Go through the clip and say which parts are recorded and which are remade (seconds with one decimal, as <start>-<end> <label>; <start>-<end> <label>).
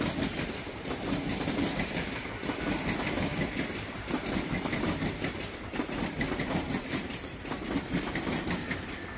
0.0-1.3 recorded; 1.3-2.3 remade; 2.3-3.3 recorded; 3.3-8.5 remade; 8.5-9.2 recorded